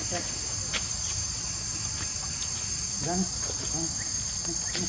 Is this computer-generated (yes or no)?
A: no